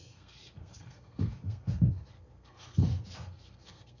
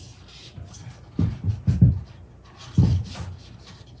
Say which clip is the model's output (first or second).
first